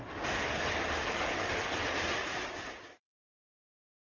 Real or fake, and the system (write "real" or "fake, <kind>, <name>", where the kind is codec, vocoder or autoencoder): real